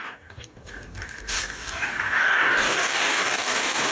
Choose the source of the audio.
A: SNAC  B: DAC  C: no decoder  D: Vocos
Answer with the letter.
B